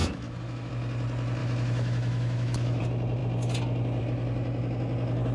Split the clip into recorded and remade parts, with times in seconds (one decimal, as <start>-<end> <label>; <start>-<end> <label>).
0.0-0.7 remade; 0.7-1.4 recorded; 1.4-2.8 remade; 2.8-5.3 recorded